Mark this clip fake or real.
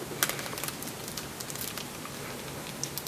real